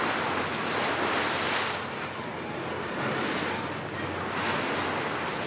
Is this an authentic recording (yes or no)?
yes